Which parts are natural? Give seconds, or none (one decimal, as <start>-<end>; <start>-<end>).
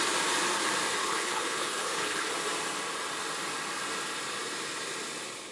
0.0-1.0; 2.3-5.5